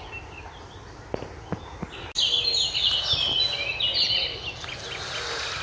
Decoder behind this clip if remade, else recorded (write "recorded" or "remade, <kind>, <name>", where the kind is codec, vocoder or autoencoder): recorded